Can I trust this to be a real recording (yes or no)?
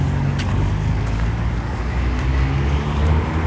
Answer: no